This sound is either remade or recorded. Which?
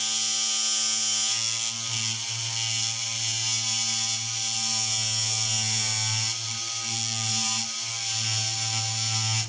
recorded